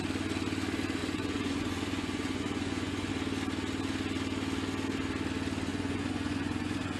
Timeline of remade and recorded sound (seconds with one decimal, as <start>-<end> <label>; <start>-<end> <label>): 0.0-1.0 recorded; 1.0-3.1 remade; 3.1-5.7 recorded; 5.7-7.0 remade